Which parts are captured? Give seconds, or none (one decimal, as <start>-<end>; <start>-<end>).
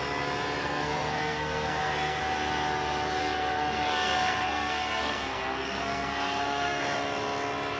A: 0.0-0.6; 2.2-3.2; 6.8-7.8